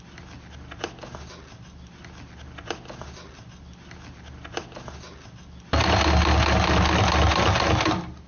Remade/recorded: recorded